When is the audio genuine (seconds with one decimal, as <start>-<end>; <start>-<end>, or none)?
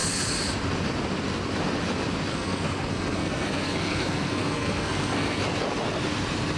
0.0-2.3; 5.4-6.6